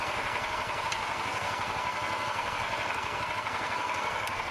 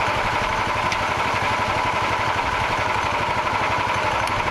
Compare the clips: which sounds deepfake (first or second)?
first